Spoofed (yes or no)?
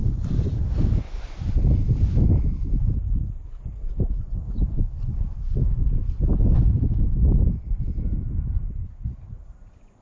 no